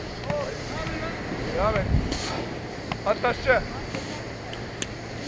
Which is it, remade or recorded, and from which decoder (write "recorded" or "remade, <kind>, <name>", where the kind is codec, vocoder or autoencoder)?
recorded